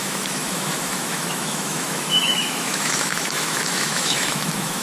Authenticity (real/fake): fake